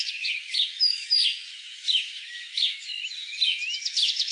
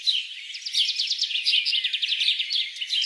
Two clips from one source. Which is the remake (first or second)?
first